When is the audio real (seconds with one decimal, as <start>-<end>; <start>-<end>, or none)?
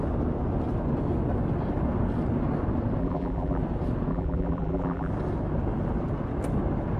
0.0-3.0; 3.6-4.1; 5.1-7.0